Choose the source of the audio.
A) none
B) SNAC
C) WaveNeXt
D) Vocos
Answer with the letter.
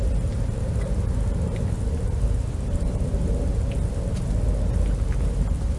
A